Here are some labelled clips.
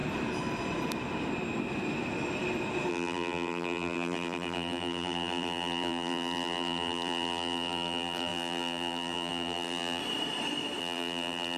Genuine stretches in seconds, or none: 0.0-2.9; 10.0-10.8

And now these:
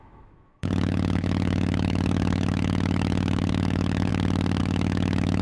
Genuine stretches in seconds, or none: 4.1-4.6

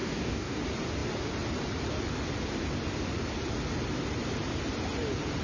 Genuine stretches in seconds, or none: 0.6-5.4

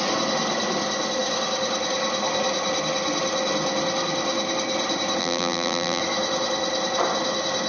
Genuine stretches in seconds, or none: 0.0-5.2; 6.0-7.7

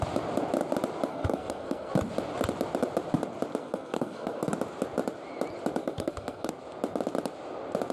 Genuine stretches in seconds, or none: 0.0-1.1; 1.9-3.6; 4.5-5.8; 6.5-7.9

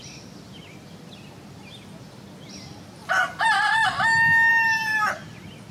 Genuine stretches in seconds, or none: 0.0-3.0; 3.6-4.5; 5.1-5.7

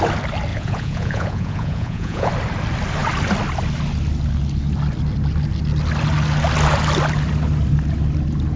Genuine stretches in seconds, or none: 0.0-0.5; 2.3-8.6